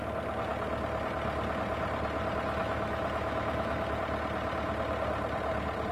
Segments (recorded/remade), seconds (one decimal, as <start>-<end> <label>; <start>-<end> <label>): 0.0-2.6 recorded; 2.6-4.0 remade; 4.0-5.9 recorded